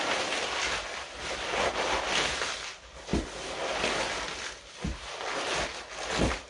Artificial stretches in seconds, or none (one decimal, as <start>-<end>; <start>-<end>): none